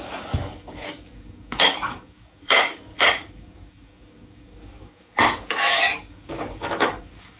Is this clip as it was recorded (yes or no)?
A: no